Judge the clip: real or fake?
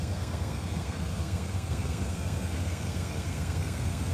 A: fake